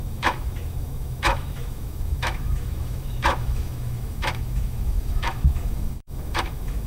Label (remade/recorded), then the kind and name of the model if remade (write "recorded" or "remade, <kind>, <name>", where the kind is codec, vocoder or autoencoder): remade, autoencoder, DAC-VAE